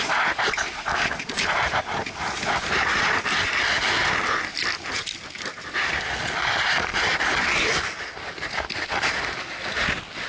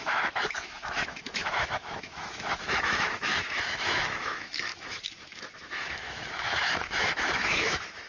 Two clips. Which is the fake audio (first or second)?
second